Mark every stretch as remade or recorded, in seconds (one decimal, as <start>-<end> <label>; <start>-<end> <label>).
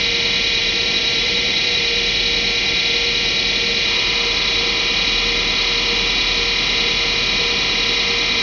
0.0-0.6 recorded; 0.6-1.8 remade; 1.8-8.4 recorded